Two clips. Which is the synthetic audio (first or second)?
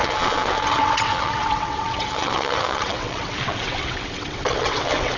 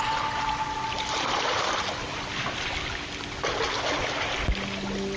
first